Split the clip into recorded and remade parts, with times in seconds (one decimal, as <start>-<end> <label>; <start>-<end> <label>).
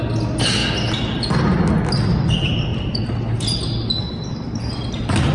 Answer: 0.0-5.3 recorded